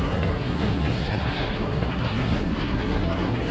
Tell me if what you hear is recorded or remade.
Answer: remade